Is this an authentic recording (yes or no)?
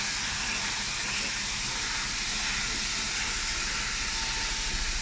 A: yes